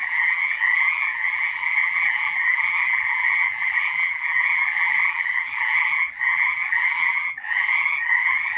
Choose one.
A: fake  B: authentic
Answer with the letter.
A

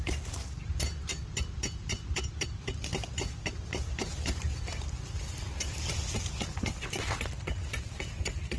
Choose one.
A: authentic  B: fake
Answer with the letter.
A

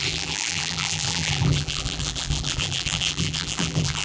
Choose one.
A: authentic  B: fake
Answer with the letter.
B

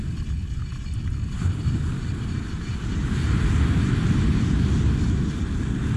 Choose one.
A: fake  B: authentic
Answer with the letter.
B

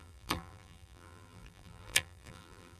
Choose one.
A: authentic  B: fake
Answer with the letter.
B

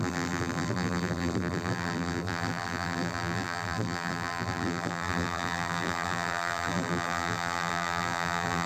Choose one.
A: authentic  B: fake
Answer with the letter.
B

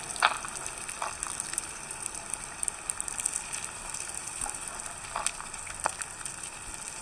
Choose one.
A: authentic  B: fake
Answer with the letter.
B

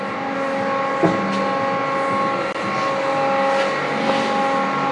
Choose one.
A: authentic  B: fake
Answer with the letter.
A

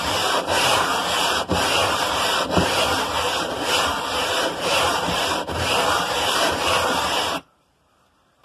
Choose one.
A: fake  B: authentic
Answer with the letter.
A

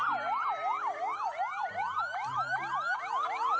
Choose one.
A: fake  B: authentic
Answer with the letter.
A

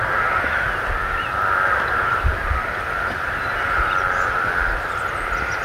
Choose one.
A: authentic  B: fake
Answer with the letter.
A